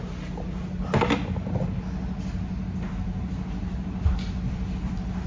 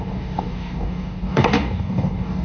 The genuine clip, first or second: first